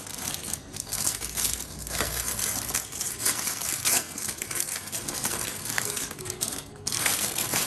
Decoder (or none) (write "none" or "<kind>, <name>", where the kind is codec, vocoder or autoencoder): codec, SNAC